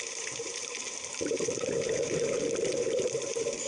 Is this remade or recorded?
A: remade